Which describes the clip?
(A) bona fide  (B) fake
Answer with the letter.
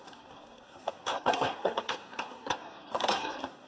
B